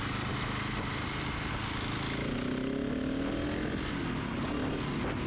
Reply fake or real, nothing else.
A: real